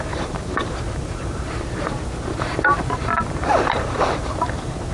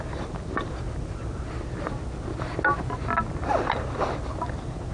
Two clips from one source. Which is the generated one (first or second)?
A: first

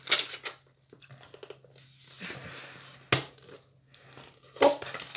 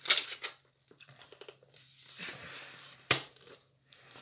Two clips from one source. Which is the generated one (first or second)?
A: second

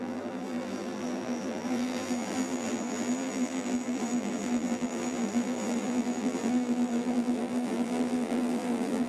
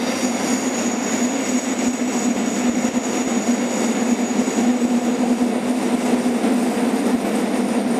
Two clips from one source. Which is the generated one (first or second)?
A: first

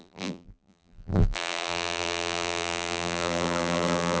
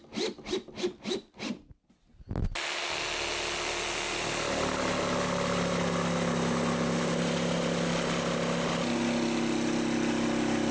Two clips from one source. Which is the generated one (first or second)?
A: first